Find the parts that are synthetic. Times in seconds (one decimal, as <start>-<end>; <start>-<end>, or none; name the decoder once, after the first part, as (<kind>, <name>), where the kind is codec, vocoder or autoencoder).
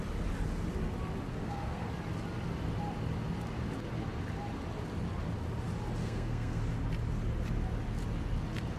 1.3-1.9 (codec, SNAC); 6.0-6.6